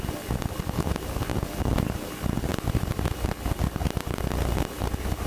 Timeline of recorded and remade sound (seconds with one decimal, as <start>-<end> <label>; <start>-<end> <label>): 0.0-5.3 recorded